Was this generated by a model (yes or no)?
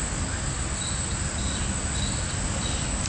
no